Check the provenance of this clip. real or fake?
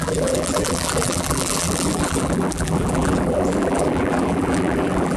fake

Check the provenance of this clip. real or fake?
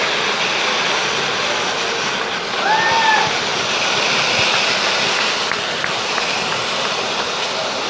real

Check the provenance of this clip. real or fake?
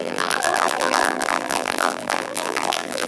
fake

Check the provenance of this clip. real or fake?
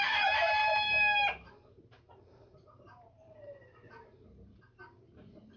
fake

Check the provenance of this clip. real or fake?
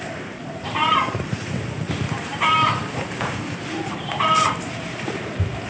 fake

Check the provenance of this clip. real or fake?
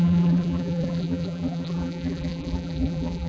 fake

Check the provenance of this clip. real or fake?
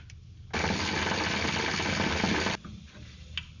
real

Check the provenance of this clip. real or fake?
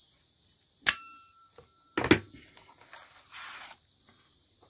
real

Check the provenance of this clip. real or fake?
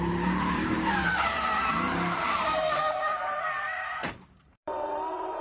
fake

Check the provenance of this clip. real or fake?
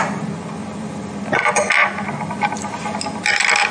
real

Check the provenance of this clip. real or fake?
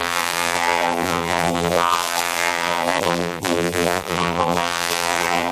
fake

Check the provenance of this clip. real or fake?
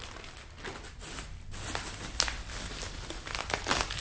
real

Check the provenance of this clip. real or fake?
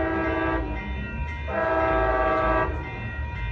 real